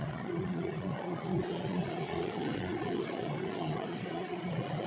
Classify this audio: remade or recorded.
remade